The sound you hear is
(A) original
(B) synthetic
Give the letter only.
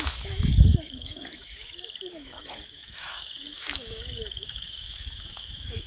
B